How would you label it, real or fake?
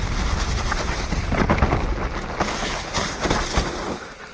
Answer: real